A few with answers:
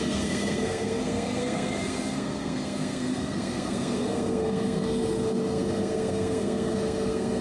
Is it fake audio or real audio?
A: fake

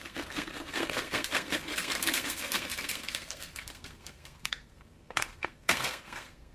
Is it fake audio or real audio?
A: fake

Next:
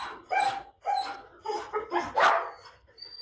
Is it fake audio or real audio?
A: real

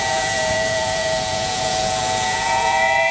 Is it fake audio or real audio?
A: fake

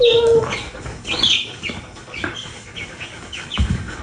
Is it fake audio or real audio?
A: fake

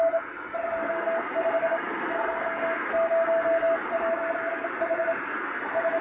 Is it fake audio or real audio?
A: real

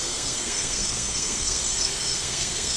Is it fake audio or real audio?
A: fake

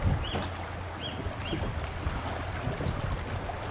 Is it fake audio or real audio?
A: real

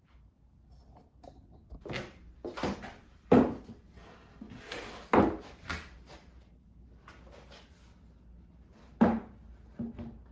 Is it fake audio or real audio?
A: real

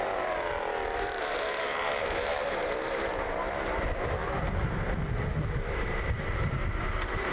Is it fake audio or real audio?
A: fake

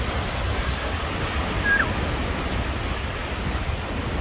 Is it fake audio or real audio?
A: real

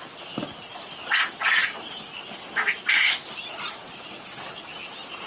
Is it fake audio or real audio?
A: real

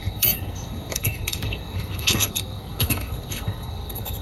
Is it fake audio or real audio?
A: fake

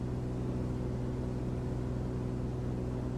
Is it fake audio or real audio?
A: real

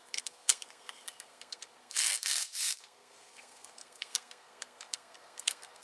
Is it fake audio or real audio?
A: fake